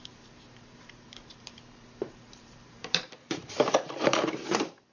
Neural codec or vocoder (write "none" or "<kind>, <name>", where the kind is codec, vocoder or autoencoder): vocoder, BigVGAN v2